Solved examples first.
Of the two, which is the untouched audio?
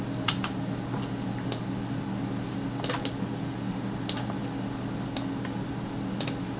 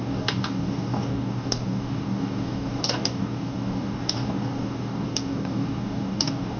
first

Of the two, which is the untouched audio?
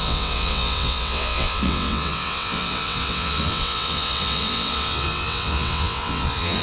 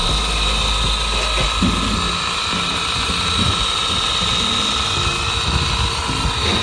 second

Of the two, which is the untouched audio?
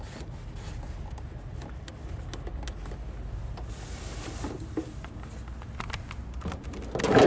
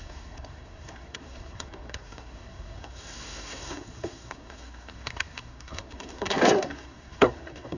first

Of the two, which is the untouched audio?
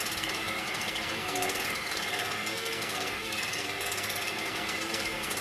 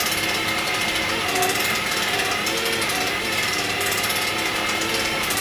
second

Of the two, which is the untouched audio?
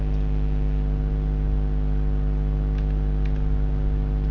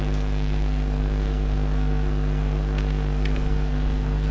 first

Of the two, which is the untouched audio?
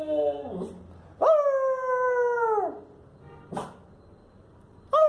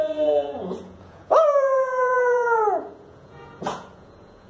first